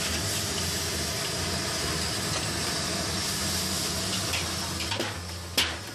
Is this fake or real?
real